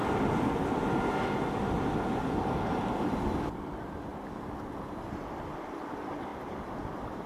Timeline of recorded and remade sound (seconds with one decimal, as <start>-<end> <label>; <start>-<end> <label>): 0.0-4.1 remade; 4.1-5.8 recorded; 5.8-7.3 remade